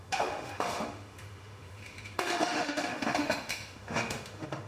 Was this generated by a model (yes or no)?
yes